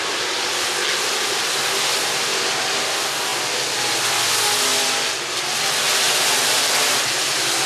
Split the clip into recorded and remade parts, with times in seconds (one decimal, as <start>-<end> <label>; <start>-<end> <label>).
0.0-7.7 recorded